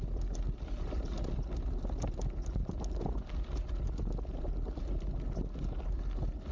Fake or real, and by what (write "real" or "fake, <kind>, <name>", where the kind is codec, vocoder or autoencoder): real